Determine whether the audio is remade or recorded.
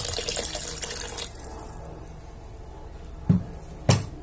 recorded